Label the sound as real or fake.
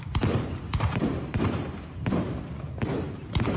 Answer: fake